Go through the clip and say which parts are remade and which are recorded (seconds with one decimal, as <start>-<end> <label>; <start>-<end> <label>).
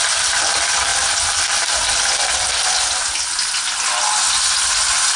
0.0-5.2 recorded